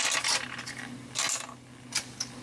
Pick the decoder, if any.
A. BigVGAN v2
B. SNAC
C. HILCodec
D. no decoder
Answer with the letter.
D